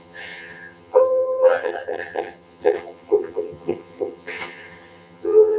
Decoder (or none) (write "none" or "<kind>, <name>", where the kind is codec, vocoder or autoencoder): vocoder, HiFi-GAN